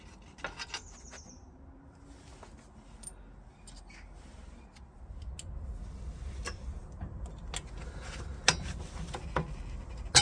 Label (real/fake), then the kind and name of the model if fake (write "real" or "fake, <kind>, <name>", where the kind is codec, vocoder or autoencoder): real